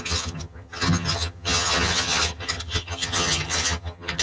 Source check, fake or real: fake